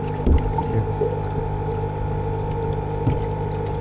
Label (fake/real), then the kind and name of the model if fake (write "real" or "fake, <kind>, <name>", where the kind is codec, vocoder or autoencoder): real